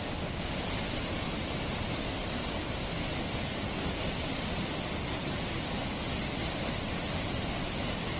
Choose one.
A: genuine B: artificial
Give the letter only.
A